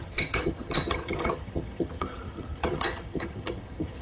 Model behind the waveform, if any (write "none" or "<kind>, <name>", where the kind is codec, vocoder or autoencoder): vocoder, HiFi-GAN